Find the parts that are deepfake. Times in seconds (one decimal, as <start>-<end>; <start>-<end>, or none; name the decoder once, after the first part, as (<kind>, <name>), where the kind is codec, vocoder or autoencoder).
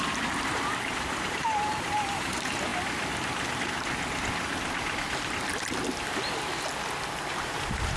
0.0-2.7 (vocoder, BigVGAN v2); 7.3-8.0